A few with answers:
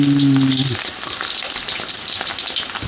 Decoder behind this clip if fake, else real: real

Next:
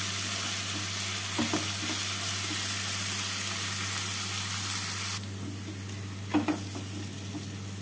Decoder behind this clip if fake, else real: real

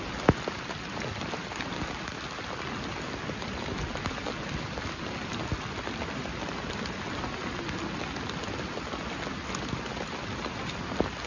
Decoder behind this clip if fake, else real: real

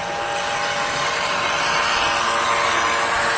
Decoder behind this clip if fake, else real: real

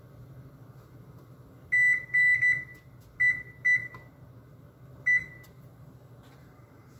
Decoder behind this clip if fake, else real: real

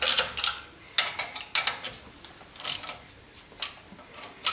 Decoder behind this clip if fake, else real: real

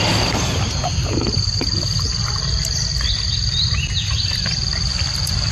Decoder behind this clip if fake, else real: real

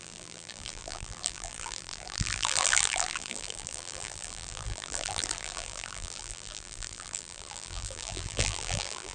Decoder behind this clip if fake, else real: fake, vocoder, BigVGAN v2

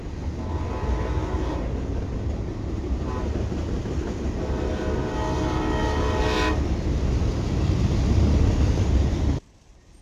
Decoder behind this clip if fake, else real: real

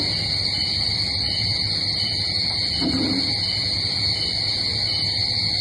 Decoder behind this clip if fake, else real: real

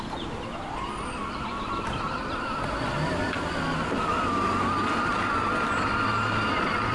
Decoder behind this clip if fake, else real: real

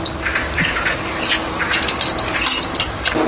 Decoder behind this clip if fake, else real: real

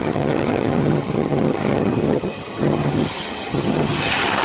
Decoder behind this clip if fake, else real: fake, vocoder, HiFi-GAN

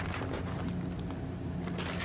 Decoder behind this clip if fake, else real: real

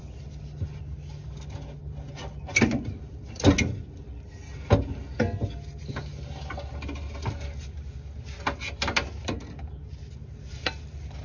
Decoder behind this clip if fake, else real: real